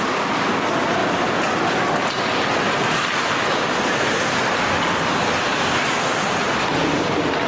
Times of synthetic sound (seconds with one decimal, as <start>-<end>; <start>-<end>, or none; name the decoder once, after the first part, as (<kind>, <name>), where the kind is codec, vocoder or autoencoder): none